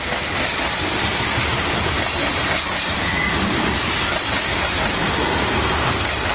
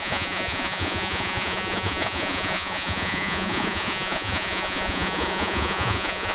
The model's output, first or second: second